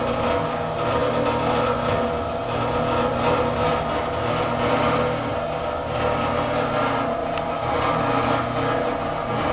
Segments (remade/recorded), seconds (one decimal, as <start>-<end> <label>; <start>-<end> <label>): 0.0-7.2 recorded; 7.2-7.7 remade; 7.7-9.5 recorded

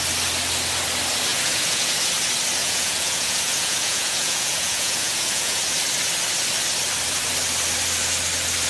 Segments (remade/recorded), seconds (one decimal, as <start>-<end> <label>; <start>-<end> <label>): 0.0-1.3 recorded; 1.3-1.9 remade; 1.9-2.6 recorded; 2.6-5.6 remade; 5.6-8.7 recorded

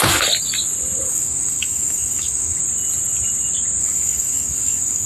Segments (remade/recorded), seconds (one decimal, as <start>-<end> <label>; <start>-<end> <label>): 0.0-1.1 recorded; 1.1-2.6 remade; 2.6-3.8 recorded; 3.8-5.1 remade

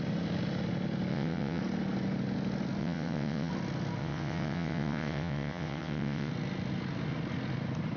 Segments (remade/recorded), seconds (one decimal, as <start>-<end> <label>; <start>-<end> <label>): 0.0-1.1 recorded; 1.1-1.6 remade; 1.6-2.8 recorded; 2.8-3.5 remade; 3.5-4.0 recorded; 4.0-6.3 remade; 6.3-8.0 recorded